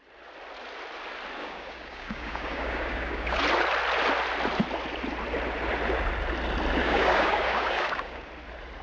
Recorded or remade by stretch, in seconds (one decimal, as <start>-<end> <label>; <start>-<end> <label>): 0.0-1.4 recorded; 1.4-3.4 remade; 3.4-6.8 recorded; 6.8-8.3 remade; 8.3-8.8 recorded